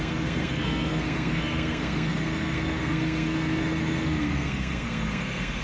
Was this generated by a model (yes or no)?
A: yes